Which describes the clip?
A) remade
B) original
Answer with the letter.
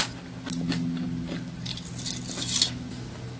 B